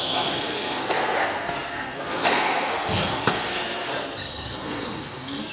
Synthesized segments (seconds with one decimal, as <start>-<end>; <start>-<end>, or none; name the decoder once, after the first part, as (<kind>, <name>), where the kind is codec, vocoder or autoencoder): 0.0-5.5 (codec, SNAC)